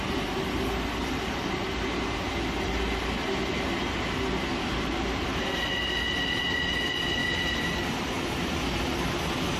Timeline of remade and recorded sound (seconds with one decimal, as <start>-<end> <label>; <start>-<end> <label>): 0.0-9.6 recorded